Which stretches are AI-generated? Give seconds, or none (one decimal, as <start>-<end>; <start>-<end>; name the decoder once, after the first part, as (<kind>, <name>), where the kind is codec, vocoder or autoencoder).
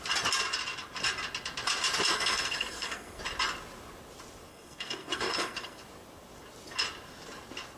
2.1-3.2 (codec, SNAC); 4.5-5.8